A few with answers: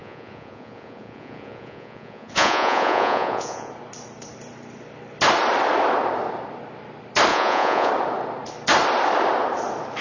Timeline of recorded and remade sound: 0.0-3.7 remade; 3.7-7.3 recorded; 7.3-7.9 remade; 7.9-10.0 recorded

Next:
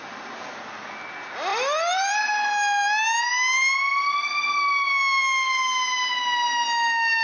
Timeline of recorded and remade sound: 0.0-1.5 recorded; 1.5-2.2 remade; 2.2-7.2 recorded

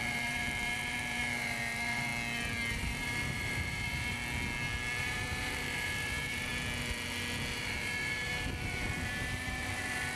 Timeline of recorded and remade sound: 0.0-2.1 remade; 2.1-2.7 recorded; 2.7-4.2 remade; 4.2-5.0 recorded; 5.0-6.5 remade; 6.5-7.5 recorded; 7.5-10.2 remade

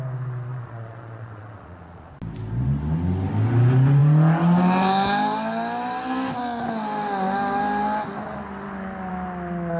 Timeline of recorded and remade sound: 0.0-0.5 recorded; 0.5-2.1 remade; 2.1-9.8 recorded

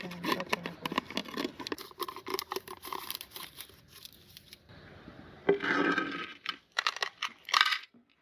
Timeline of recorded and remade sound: 0.0-2.3 recorded; 2.3-3.7 remade; 3.7-6.3 recorded; 6.3-8.2 remade